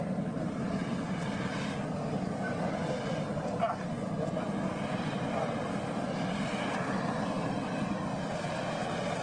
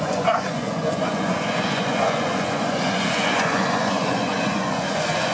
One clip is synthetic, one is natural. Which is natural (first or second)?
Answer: first